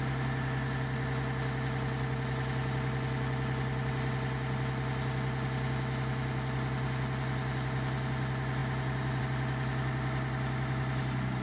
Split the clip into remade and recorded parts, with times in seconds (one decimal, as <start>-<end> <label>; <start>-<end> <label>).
0.0-11.4 recorded